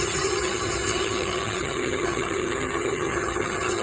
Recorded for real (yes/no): no